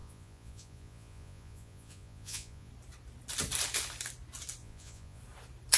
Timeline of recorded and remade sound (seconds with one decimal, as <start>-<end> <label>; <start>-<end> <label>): 0.0-2.7 remade; 2.7-4.6 recorded; 4.6-5.2 remade; 5.2-5.8 recorded